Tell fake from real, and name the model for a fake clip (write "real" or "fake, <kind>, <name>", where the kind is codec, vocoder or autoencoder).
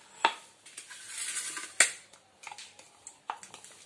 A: real